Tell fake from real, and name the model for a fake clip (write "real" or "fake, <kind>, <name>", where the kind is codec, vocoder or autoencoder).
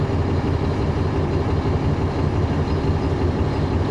real